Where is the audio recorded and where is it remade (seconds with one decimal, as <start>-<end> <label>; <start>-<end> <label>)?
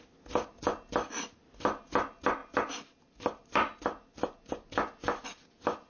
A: 0.0-5.9 recorded